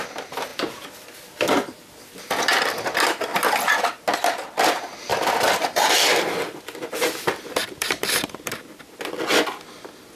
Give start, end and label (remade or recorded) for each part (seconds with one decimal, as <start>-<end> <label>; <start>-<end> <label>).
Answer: 0.0-5.1 recorded; 5.1-6.6 remade; 6.6-7.6 recorded; 7.6-8.5 remade; 8.5-10.2 recorded